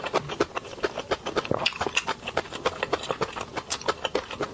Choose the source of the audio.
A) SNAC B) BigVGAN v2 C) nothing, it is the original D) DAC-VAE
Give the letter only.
C